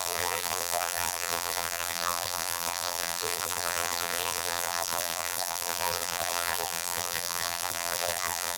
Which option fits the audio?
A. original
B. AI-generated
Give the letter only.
B